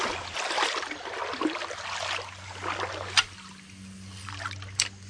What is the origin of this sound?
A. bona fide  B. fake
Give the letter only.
A